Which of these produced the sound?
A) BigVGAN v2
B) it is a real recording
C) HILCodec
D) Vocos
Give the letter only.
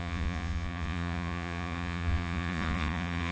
D